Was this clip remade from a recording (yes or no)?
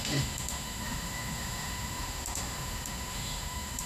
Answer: yes